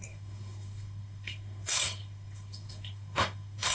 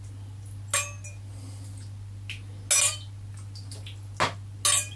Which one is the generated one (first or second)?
first